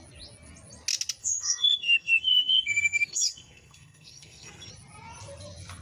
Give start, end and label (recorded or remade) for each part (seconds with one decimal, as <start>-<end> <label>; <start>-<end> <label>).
0.0-1.2 recorded; 1.2-4.7 remade; 4.7-5.8 recorded